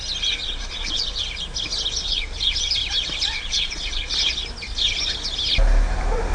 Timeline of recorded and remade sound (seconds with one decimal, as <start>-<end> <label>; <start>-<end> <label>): 0.0-0.4 recorded; 0.4-1.2 remade; 1.2-2.0 recorded; 2.0-2.7 remade; 2.7-3.3 recorded; 3.3-4.1 remade; 4.1-6.3 recorded